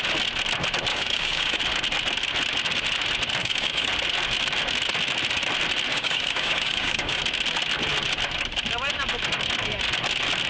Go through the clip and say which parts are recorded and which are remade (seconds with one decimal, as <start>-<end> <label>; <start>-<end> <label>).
0.0-0.9 recorded; 0.9-1.6 remade; 1.6-3.4 recorded; 3.4-3.9 remade; 3.9-5.9 recorded; 5.9-7.2 remade; 7.2-10.5 recorded